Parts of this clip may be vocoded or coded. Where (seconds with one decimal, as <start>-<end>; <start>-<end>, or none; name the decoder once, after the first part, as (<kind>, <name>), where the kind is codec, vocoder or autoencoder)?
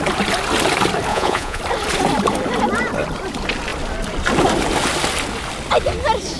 1.1-1.6 (vocoder, Vocos)